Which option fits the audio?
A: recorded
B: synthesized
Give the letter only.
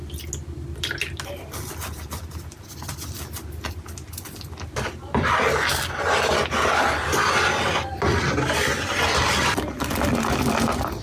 A